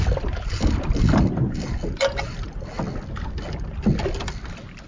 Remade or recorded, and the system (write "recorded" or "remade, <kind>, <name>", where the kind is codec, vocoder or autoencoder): recorded